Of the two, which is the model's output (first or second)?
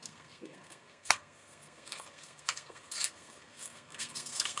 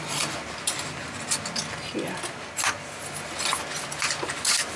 first